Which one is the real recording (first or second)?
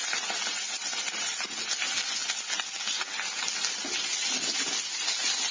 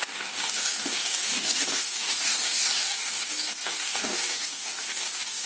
first